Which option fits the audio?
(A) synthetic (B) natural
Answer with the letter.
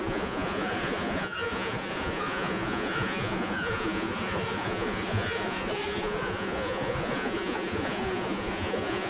A